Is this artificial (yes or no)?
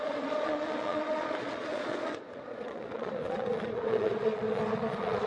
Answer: yes